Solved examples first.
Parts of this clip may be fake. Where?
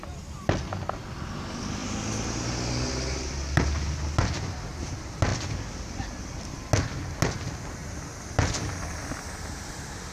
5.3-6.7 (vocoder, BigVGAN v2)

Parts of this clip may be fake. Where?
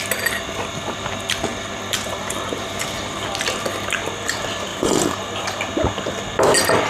4.7-6.2 (vocoder, BigVGAN v2)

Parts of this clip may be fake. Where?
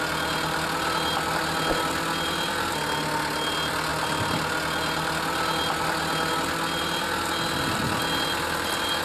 none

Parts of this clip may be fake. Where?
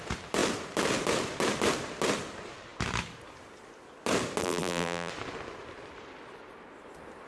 4.4-5.1 (vocoder, BigVGAN v2)